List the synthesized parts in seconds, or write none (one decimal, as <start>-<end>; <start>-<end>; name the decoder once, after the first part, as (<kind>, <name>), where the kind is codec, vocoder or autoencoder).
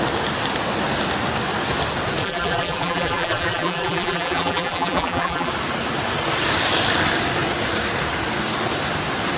2.2-5.5 (vocoder, BigVGAN v2)